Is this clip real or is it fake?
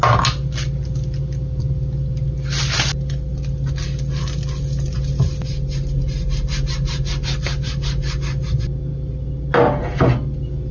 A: real